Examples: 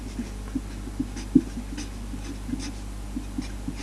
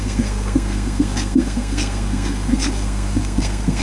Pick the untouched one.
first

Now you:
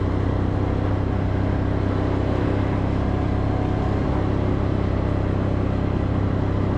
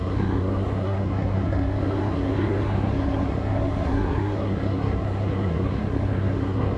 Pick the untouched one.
first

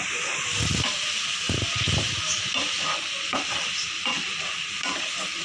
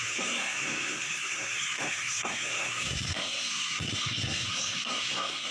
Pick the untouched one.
first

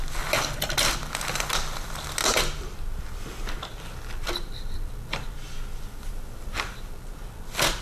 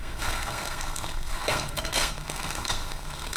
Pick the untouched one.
first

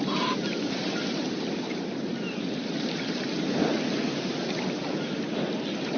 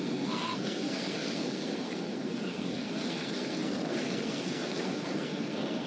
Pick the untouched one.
first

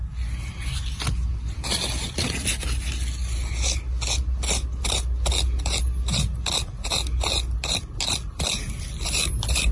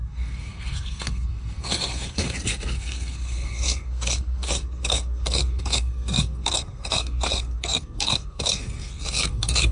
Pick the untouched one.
first